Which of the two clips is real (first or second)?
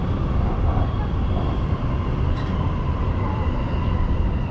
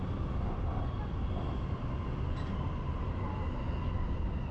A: second